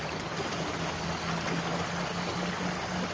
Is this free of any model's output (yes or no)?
yes